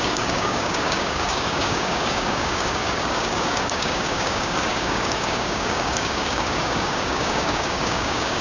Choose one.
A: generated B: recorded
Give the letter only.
A